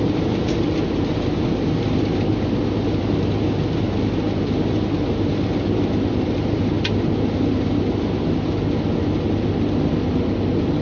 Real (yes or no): yes